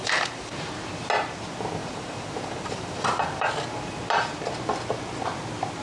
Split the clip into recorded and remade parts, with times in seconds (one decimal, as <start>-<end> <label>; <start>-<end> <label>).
0.0-0.7 remade; 0.7-1.8 recorded; 1.8-3.5 remade; 3.5-5.8 recorded